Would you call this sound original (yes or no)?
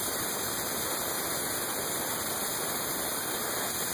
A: yes